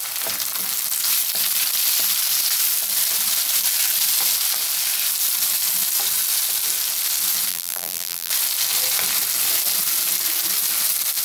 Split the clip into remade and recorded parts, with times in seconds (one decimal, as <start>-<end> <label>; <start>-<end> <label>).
0.0-7.5 recorded; 7.5-8.3 remade; 8.3-11.2 recorded

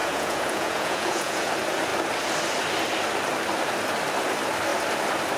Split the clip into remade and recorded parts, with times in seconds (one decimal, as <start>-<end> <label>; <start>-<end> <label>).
0.0-1.5 remade; 1.5-5.4 recorded

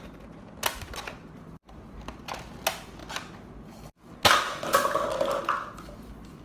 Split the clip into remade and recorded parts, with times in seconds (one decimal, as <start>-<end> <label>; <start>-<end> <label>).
0.0-6.4 recorded

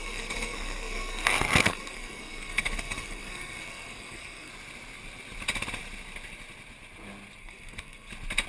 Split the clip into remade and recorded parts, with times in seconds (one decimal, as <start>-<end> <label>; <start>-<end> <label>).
0.0-4.5 remade; 4.5-7.4 recorded; 7.4-8.1 remade; 8.1-8.5 recorded

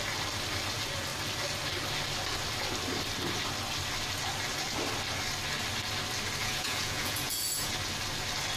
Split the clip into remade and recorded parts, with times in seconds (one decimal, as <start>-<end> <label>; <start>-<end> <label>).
0.0-6.4 recorded; 6.4-7.7 remade; 7.7-8.6 recorded

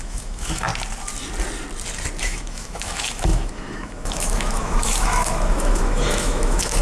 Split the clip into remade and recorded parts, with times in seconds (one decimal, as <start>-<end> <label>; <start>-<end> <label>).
0.0-0.7 remade; 0.7-2.2 recorded; 2.2-6.8 remade

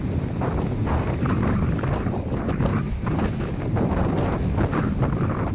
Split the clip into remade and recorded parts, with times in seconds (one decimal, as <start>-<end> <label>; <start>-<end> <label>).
0.0-5.5 recorded

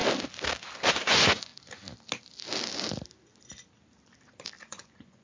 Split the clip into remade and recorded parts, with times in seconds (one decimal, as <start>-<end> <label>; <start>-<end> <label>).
0.0-0.9 recorded; 0.9-1.5 remade; 1.5-4.6 recorded; 4.6-5.2 remade